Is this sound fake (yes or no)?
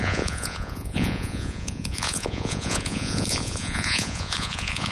yes